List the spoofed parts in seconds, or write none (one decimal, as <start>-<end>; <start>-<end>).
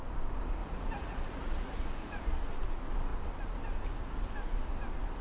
0.6-2.4